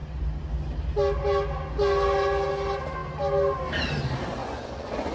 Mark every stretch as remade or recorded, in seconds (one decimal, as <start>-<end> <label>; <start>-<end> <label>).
0.0-4.4 recorded; 4.4-5.1 remade